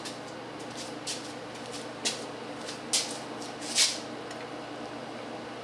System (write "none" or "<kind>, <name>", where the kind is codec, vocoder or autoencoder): none